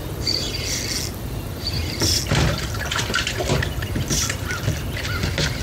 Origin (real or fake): real